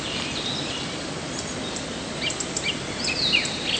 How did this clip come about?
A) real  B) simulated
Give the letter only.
A